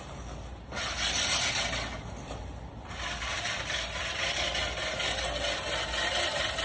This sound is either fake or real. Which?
real